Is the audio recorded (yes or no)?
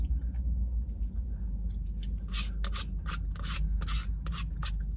yes